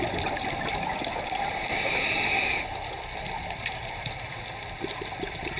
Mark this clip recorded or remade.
recorded